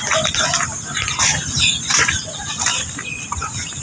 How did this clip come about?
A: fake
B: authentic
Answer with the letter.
B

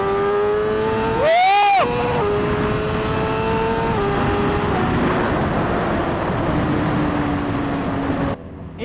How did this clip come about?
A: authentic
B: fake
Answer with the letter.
A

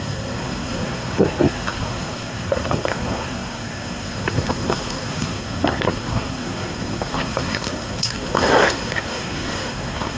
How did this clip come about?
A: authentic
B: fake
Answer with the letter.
B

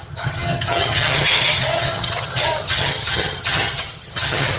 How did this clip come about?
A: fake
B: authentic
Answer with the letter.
A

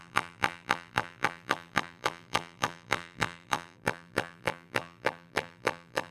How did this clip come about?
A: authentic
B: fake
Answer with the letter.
B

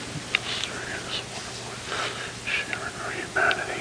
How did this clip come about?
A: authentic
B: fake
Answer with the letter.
A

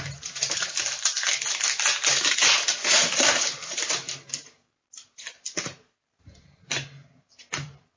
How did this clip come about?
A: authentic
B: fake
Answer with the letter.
B